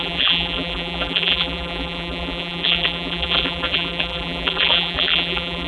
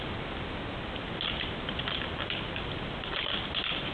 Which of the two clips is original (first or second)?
second